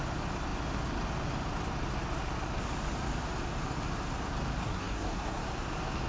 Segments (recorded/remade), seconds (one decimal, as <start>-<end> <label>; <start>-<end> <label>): 0.0-4.6 recorded; 4.6-5.4 remade; 5.4-6.1 recorded